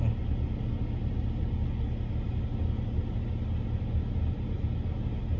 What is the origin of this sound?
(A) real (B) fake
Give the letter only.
A